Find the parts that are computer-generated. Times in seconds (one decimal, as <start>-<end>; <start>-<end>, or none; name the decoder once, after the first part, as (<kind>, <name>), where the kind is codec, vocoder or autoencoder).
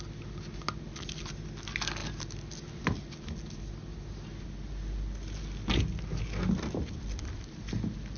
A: none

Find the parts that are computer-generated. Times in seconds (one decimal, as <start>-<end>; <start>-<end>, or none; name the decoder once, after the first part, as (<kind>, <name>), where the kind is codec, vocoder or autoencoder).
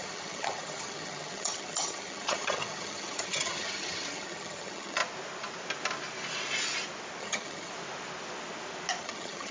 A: 0.0-5.0 (vocoder, HiFi-GAN); 7.2-7.7; 9.0-9.5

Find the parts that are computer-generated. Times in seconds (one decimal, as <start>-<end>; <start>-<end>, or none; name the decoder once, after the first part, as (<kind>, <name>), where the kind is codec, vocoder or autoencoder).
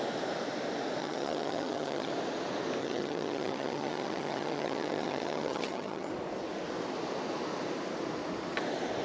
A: 1.0-2.1 (vocoder, HiFi-GAN); 2.8-6.1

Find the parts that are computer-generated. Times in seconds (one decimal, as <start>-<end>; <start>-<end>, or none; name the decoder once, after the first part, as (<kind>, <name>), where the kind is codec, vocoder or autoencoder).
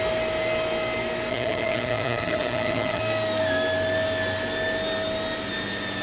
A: 1.3-3.0 (vocoder, HiFi-GAN)